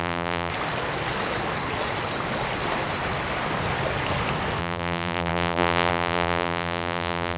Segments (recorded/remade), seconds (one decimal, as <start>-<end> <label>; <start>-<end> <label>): 0.0-0.5 remade; 0.5-4.6 recorded; 4.6-7.4 remade